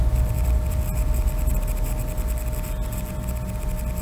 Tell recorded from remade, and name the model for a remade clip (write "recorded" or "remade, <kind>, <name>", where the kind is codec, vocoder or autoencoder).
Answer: recorded